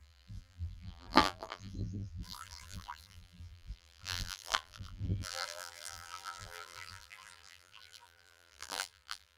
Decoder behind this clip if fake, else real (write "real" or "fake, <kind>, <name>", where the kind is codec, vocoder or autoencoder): fake, vocoder, BigVGAN v2